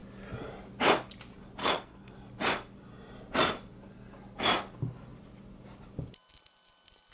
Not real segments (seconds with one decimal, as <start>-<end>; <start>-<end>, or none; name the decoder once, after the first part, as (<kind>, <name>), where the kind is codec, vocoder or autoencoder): 1.6-2.1 (codec, SNAC)